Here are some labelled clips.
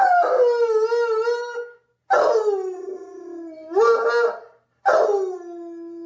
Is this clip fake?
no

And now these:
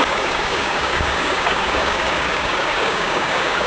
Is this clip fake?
yes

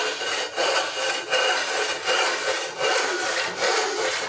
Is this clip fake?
no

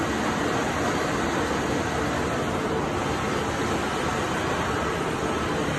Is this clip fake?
no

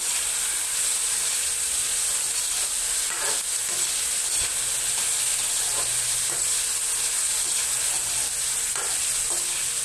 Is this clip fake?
no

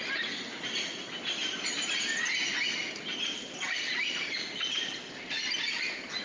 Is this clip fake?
no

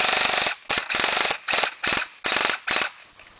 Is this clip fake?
no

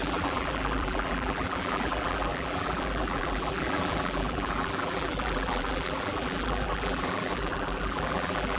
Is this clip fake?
yes